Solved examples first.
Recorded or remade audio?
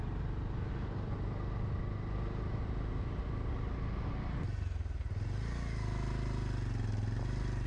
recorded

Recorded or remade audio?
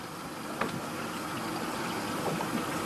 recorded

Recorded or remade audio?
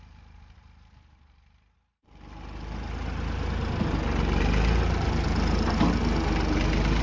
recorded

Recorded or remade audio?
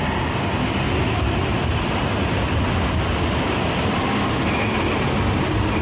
recorded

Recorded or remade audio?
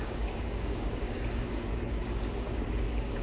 remade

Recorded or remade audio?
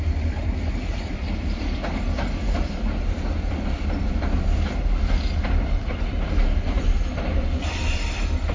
remade